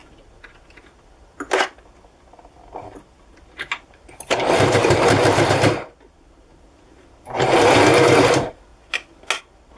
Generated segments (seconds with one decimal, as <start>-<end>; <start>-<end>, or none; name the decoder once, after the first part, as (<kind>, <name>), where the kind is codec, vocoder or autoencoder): 3.2-8.7 (vocoder, BigVGAN v2); 9.4-9.8